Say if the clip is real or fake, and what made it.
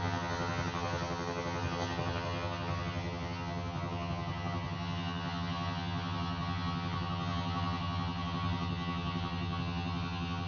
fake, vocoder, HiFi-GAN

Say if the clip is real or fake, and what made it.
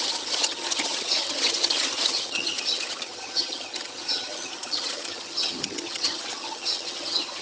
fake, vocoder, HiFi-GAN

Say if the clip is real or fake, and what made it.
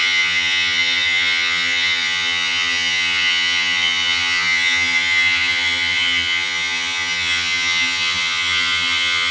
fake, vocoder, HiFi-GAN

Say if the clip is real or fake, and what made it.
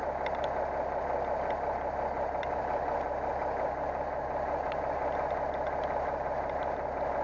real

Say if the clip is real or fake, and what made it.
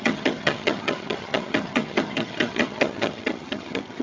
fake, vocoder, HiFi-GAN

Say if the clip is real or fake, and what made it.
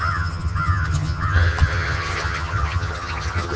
fake, vocoder, HiFi-GAN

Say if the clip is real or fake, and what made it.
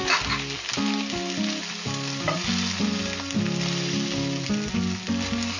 real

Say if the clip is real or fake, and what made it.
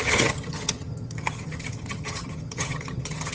fake, vocoder, HiFi-GAN